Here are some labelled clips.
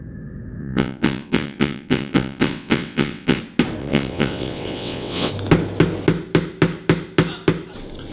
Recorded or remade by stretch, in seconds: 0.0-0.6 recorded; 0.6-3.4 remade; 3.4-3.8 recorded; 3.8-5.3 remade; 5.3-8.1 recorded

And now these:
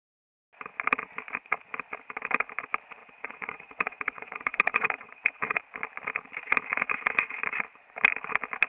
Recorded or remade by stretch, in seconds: 0.0-3.0 recorded; 3.0-5.6 remade; 5.6-8.7 recorded

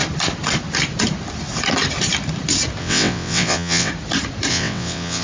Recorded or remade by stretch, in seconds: 0.0-2.8 recorded; 2.8-3.9 remade; 3.9-4.5 recorded; 4.5-5.2 remade

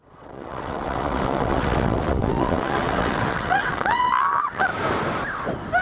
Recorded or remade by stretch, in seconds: 0.0-4.7 remade; 4.7-5.8 recorded

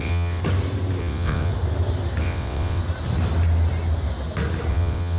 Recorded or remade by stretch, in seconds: 0.0-0.4 remade; 0.4-1.0 recorded; 1.0-1.5 remade; 1.5-2.2 recorded; 2.2-2.8 remade; 2.8-4.7 recorded; 4.7-5.2 remade